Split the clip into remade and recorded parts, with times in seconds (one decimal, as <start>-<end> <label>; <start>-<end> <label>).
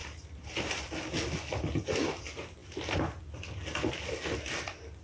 0.0-5.0 recorded